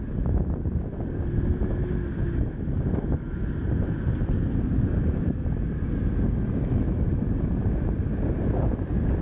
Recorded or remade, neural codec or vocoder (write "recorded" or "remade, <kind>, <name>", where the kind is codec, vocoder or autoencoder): recorded